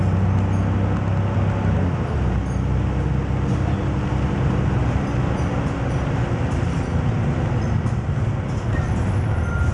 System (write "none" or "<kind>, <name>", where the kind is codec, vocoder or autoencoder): none